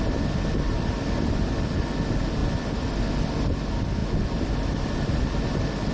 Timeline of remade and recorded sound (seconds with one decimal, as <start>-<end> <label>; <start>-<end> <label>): 0.0-5.9 recorded